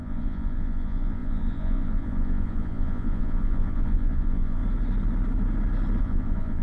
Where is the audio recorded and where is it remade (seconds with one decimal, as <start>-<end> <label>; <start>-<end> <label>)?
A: 0.0-4.6 remade; 4.6-6.0 recorded; 6.0-6.6 remade